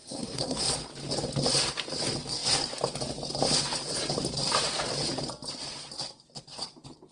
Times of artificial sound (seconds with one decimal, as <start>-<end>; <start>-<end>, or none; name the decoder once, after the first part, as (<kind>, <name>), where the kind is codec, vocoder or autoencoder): 0.0-0.6 (codec, SNAC)